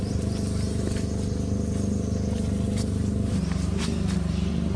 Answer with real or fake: real